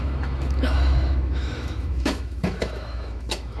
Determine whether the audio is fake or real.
fake